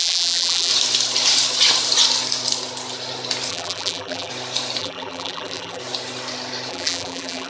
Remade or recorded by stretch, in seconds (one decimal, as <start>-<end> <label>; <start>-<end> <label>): 0.0-0.7 remade; 0.7-3.5 recorded; 3.5-4.3 remade; 4.3-4.8 recorded; 4.8-5.8 remade; 5.8-6.7 recorded; 6.7-7.5 remade